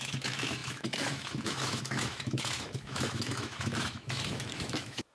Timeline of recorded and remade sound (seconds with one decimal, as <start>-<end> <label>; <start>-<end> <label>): 0.0-5.1 remade